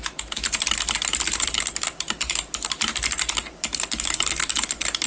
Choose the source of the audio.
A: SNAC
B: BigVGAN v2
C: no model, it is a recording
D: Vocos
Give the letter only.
B